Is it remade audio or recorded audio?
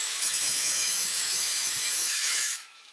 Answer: remade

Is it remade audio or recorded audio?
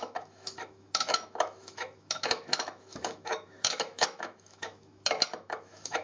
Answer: remade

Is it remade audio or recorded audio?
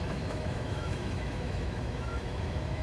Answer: remade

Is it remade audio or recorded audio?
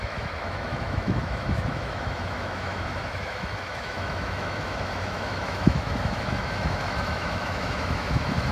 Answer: remade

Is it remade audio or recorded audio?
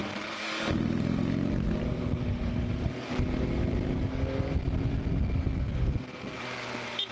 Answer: recorded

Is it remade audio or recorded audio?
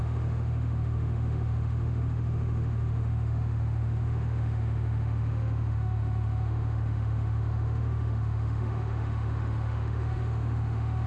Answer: remade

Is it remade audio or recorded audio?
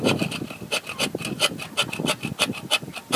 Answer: recorded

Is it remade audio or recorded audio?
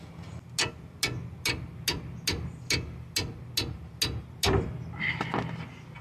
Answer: recorded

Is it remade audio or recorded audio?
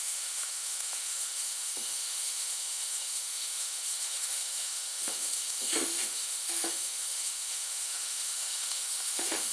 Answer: remade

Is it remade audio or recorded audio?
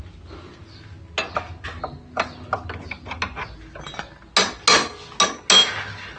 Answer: recorded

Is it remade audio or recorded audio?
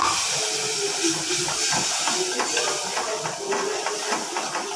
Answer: recorded